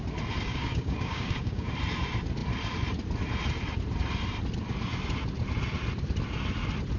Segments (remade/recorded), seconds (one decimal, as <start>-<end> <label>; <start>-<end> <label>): 0.0-0.5 recorded; 0.5-1.7 remade; 1.7-7.0 recorded